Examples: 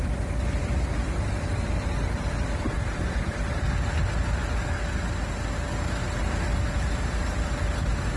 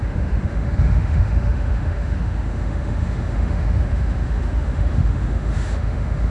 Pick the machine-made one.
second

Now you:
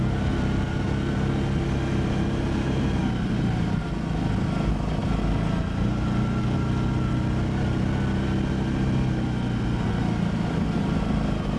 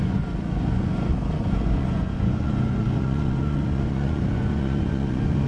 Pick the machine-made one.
second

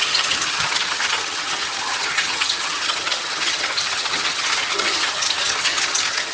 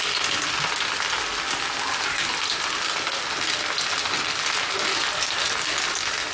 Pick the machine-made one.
first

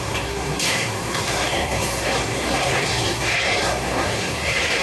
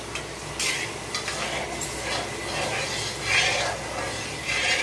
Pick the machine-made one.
first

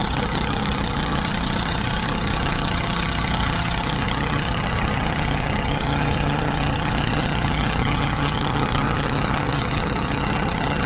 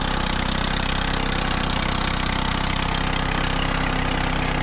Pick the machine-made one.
first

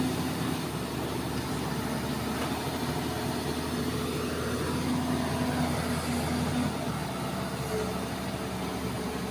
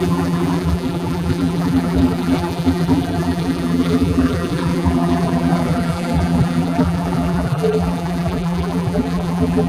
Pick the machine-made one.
second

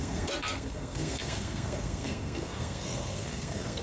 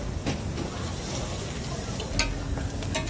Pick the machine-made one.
first